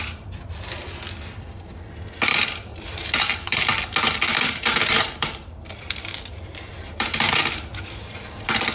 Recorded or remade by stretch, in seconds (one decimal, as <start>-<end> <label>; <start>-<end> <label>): 0.0-2.7 recorded; 2.7-3.7 remade; 3.7-4.3 recorded; 4.3-7.3 remade; 7.3-8.7 recorded